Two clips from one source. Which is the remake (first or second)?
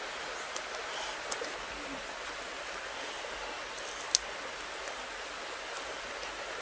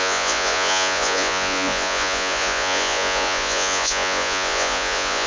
second